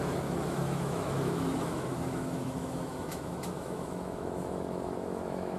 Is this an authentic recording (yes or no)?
no